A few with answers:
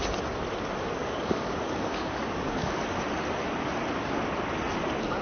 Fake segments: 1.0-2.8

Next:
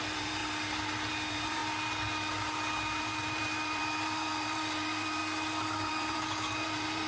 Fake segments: 0.0-0.4; 1.1-1.6; 3.0-5.2; 5.9-7.1

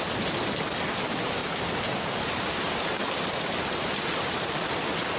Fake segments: 1.4-4.5

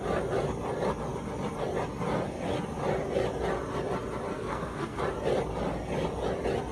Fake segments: 4.3-5.0

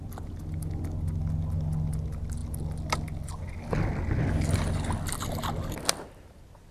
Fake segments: none

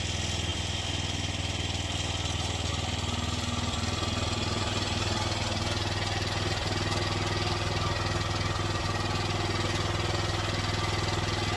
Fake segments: none

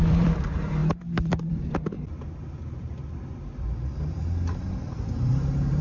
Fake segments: 0.0-5.8